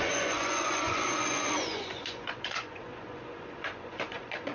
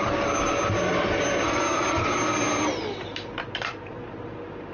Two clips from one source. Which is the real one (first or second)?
second